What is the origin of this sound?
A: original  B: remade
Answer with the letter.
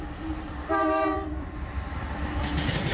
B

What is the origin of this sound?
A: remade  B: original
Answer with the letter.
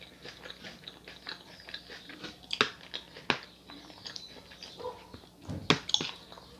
B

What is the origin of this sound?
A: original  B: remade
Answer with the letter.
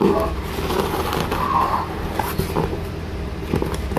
A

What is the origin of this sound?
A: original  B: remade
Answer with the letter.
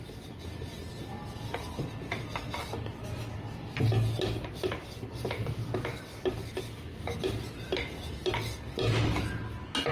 A